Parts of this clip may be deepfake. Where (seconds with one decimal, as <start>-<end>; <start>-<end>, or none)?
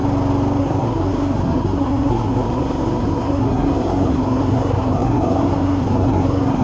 0.6-6.6